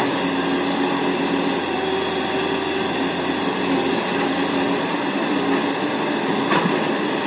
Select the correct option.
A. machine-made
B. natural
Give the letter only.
B